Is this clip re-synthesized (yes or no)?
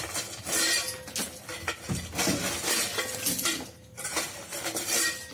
no